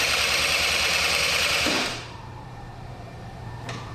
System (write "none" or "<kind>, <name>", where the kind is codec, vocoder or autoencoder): vocoder, BigVGAN v2